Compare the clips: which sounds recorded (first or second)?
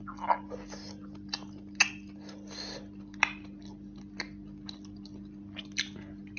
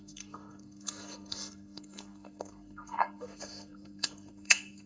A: first